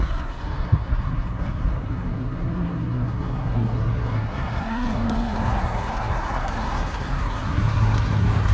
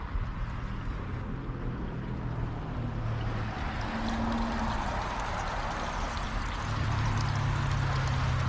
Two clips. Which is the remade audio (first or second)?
first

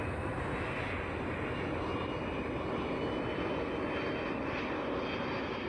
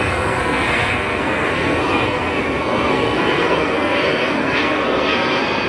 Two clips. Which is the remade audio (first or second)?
second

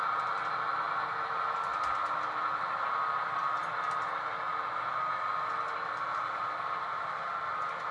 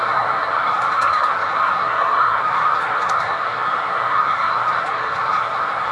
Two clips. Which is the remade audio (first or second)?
second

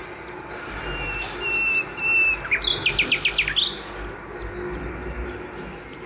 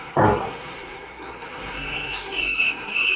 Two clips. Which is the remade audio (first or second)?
second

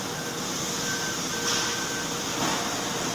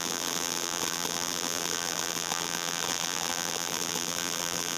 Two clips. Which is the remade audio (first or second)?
second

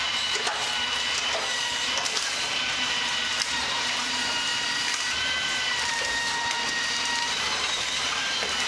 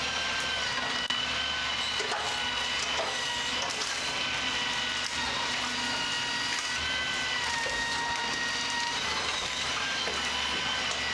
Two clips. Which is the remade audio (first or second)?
first